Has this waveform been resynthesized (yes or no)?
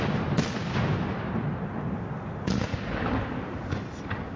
no